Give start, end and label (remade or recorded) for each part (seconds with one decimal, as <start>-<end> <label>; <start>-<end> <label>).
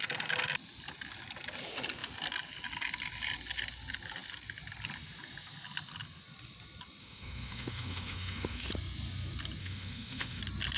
0.0-7.0 recorded; 7.0-8.7 remade; 8.7-9.6 recorded; 9.6-10.4 remade; 10.4-10.8 recorded